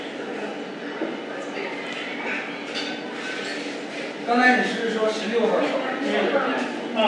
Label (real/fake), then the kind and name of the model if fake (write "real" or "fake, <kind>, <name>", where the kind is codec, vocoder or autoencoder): real